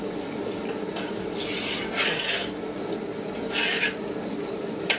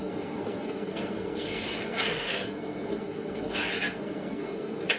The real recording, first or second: first